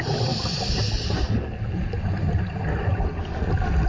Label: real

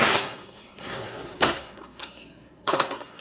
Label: fake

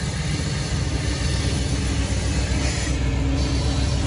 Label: real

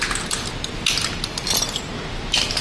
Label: real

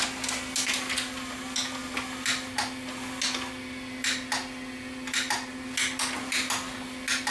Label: real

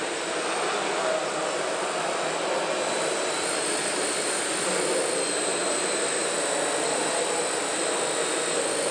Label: real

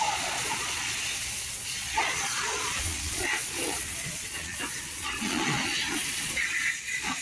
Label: fake